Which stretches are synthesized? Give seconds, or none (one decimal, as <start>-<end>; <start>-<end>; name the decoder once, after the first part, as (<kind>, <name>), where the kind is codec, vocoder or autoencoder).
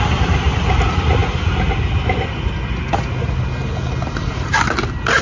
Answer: none